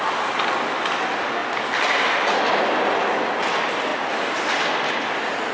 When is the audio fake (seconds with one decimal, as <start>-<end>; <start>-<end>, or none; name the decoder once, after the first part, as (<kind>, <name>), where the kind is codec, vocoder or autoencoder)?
none